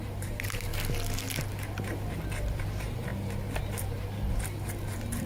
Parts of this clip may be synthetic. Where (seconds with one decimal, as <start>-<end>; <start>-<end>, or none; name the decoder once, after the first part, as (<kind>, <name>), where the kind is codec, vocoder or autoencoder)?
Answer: 0.0-0.7 (vocoder, BigVGAN v2); 1.8-3.1; 3.7-5.3